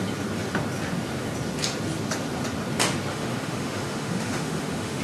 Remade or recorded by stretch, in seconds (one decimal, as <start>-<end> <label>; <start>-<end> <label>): 0.0-3.1 recorded; 3.1-5.0 remade